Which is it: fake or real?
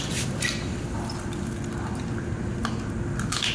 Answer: real